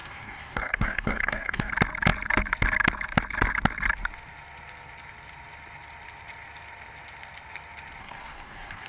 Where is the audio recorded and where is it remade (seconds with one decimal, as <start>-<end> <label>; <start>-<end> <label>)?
0.0-1.7 remade; 1.7-8.0 recorded; 8.0-8.9 remade